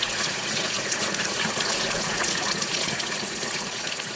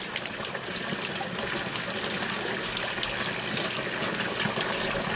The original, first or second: second